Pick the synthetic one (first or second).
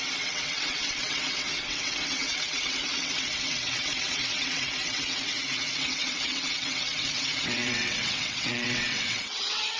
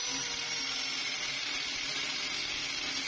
first